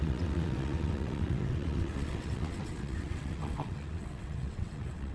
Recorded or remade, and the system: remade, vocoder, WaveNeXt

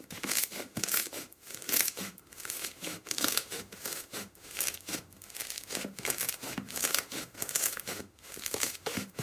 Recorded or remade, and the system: remade, autoencoder, DAC-VAE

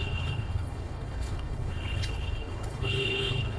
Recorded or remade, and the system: remade, codec, HILCodec